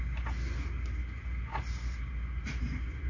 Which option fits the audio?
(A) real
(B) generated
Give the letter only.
A